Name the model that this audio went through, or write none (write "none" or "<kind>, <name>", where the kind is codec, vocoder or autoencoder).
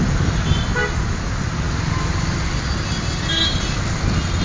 none